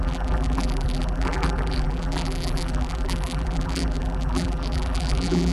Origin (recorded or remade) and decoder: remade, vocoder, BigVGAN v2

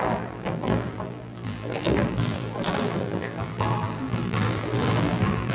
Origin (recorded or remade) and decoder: remade, vocoder, BigVGAN v2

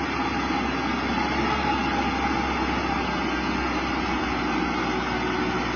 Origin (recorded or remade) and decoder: recorded